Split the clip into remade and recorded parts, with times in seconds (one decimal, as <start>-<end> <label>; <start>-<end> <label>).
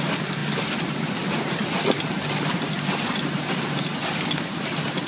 0.0-5.1 recorded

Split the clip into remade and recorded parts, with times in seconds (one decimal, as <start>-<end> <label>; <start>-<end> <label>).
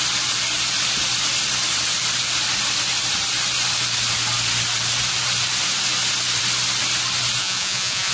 0.0-7.4 recorded; 7.4-8.1 remade